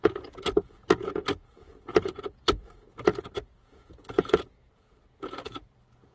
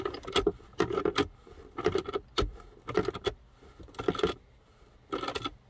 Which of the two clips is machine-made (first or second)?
first